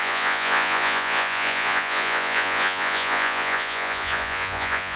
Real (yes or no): no